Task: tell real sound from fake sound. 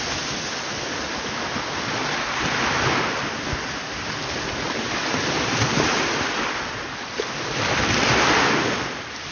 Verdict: real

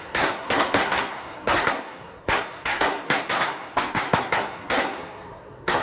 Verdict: fake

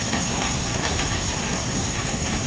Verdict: fake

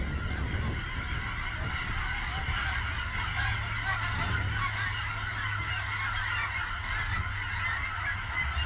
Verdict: real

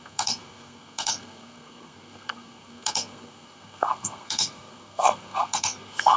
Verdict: fake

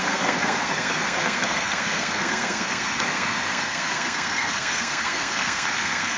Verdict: fake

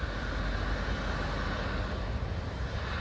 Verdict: real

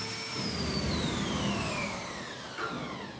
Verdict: real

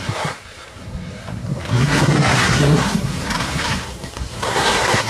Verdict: fake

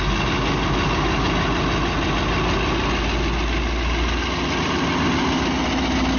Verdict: real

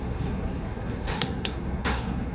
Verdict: fake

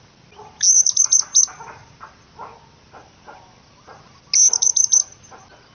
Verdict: real